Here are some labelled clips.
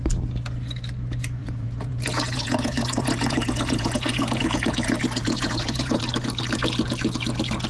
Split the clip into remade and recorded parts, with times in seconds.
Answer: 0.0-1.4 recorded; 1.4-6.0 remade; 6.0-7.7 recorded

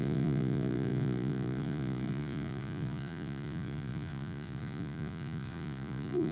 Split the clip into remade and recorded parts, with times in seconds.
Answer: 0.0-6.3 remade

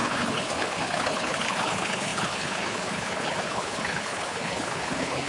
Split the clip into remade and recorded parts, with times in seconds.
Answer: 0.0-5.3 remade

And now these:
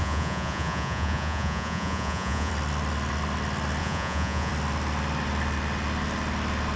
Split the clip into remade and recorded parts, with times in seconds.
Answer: 0.0-2.5 remade; 2.5-3.8 recorded; 3.8-4.5 remade; 4.5-6.8 recorded